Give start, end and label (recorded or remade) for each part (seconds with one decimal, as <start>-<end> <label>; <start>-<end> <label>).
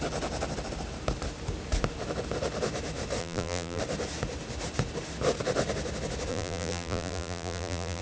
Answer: 0.0-3.2 recorded; 3.2-3.8 remade; 3.8-6.3 recorded; 6.3-8.0 remade